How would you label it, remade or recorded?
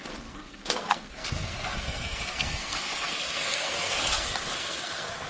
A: remade